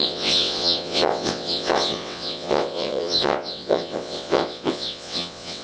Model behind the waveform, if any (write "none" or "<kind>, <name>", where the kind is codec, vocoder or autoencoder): vocoder, WaveNeXt